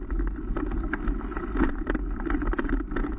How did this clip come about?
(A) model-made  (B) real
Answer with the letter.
B